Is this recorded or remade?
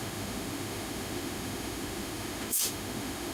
remade